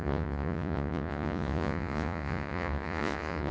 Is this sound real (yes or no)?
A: no